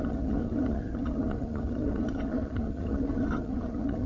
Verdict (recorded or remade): remade